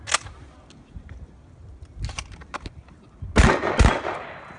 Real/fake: real